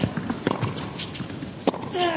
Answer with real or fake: real